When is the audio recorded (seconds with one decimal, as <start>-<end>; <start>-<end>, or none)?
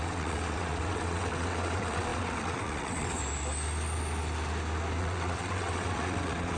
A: 3.2-5.0